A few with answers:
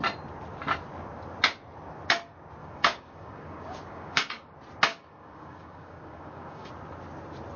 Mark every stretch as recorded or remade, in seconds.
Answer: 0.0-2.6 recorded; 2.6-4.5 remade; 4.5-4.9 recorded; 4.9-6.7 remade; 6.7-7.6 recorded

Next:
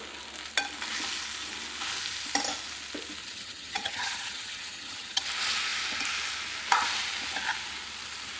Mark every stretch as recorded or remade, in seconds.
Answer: 0.0-3.2 recorded; 3.2-5.2 remade; 5.2-8.4 recorded

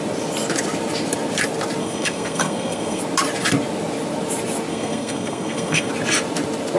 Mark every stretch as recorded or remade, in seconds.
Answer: 0.0-1.8 recorded; 1.8-3.0 remade; 3.0-4.7 recorded; 4.7-5.9 remade; 5.9-6.8 recorded

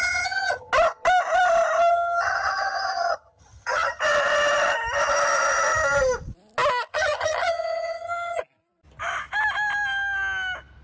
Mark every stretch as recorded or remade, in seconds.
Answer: 0.0-0.7 remade; 0.7-1.9 recorded; 1.9-4.0 remade; 4.0-6.9 recorded; 6.9-8.4 remade; 8.4-10.8 recorded

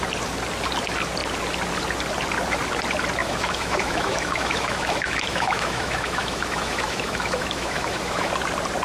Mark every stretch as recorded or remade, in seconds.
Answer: 0.0-3.2 recorded; 3.2-8.3 remade; 8.3-8.8 recorded